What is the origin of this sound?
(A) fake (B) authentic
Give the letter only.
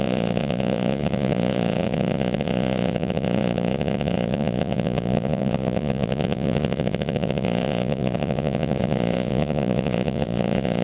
A